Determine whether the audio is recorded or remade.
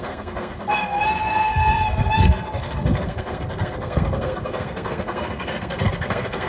remade